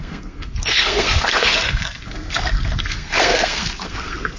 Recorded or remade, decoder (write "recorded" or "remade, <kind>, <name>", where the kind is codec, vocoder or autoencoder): remade, codec, SNAC